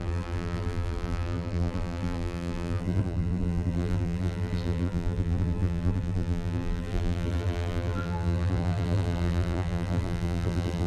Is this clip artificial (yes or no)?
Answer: yes